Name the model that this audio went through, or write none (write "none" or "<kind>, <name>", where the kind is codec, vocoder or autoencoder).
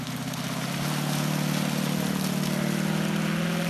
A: none